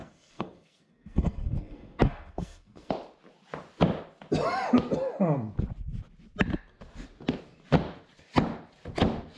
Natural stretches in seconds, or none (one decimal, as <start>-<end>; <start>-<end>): 2.9-9.4